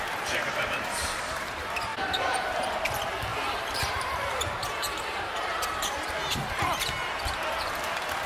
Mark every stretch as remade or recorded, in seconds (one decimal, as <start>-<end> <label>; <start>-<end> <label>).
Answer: 0.0-1.9 remade; 1.9-2.5 recorded; 2.5-8.3 remade